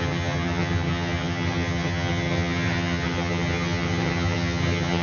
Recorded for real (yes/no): no